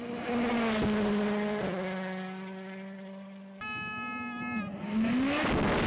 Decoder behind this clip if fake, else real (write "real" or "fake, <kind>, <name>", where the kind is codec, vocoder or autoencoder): real